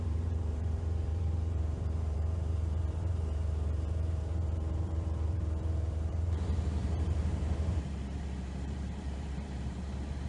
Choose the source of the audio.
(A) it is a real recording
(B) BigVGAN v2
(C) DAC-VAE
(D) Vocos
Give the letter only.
B